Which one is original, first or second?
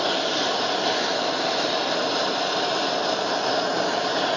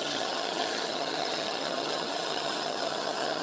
first